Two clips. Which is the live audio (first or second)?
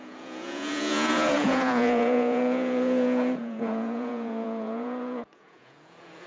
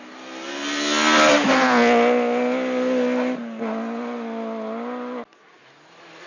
second